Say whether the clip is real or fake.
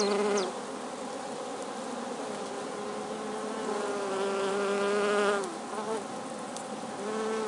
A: real